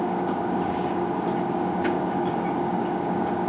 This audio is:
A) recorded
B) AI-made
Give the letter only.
B